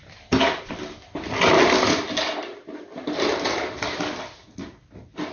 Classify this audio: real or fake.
real